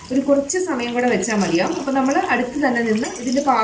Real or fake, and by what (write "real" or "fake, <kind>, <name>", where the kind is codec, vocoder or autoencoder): real